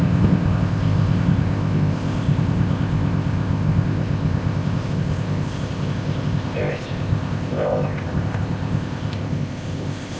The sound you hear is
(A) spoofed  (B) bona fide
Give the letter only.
A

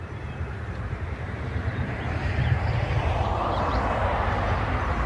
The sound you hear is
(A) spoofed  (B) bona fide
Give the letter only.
A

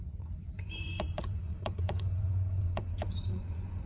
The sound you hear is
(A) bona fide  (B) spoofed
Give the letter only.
B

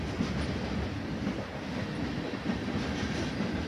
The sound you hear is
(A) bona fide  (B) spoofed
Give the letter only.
A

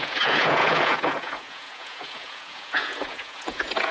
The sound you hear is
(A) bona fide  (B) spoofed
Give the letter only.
B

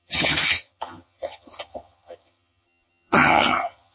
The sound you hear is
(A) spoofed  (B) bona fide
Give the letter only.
A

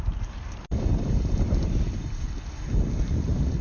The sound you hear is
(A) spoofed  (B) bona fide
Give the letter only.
A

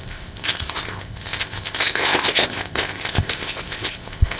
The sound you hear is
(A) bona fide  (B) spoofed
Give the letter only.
B